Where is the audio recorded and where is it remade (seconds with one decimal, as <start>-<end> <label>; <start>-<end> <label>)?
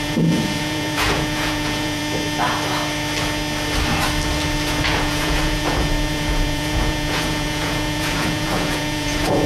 0.0-2.0 remade; 2.0-4.8 recorded; 4.8-9.5 remade